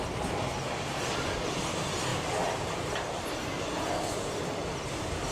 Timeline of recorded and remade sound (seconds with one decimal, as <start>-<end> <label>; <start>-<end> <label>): 0.0-5.3 recorded